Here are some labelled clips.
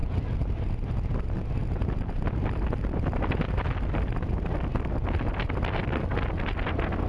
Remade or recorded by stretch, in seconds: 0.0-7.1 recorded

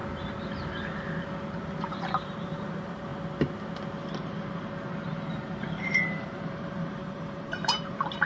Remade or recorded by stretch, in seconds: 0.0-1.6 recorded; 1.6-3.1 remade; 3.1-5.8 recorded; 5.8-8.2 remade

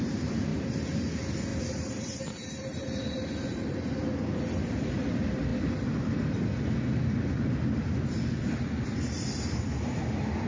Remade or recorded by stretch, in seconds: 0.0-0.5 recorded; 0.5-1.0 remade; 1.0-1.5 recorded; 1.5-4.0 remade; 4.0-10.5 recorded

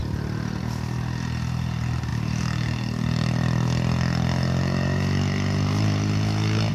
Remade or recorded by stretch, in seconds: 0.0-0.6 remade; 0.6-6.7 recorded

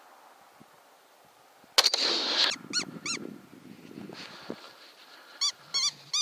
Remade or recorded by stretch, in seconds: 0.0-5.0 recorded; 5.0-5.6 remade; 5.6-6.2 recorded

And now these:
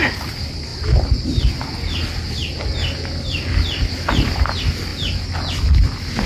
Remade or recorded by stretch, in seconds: 0.0-0.7 remade; 0.7-4.5 recorded; 4.5-4.9 remade; 4.9-5.6 recorded; 5.6-6.3 remade

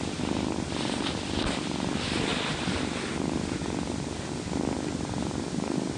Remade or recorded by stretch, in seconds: 0.0-6.0 recorded

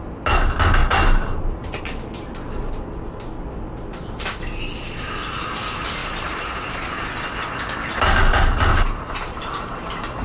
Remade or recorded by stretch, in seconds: 0.0-0.8 recorded; 0.8-1.8 remade; 1.8-6.0 recorded; 6.0-6.5 remade; 6.5-8.7 recorded; 8.7-9.7 remade; 9.7-10.2 recorded